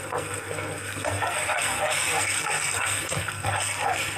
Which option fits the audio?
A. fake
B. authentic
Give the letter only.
A